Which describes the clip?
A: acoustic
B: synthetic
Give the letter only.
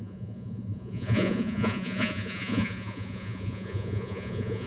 B